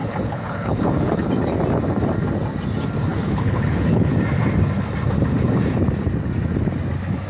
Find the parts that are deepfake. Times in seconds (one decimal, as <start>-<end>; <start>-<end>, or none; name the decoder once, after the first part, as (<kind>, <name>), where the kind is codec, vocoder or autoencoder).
0.0-1.3 (codec, HILCodec); 3.1-4.1